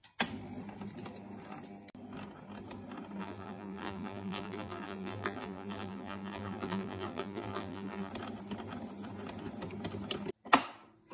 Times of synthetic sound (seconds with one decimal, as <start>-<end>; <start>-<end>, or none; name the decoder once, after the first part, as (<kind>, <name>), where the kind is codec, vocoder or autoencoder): 3.2-8.1 (vocoder, BigVGAN v2)